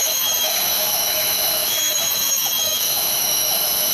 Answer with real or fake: fake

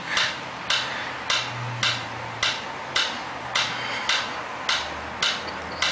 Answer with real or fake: real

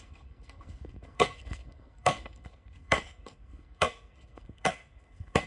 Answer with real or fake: fake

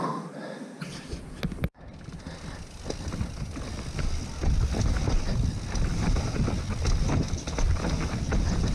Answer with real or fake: real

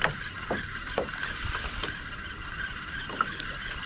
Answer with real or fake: real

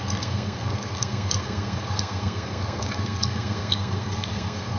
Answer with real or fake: fake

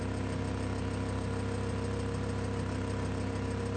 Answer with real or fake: real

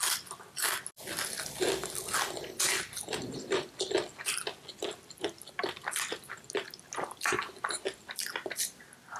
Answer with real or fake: real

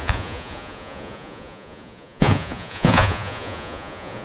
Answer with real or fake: fake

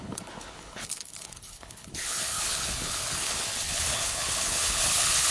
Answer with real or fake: fake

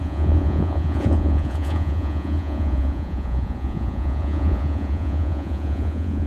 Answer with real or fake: fake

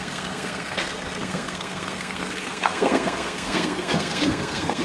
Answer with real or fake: fake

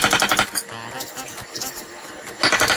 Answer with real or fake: real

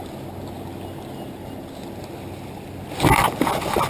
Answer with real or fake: real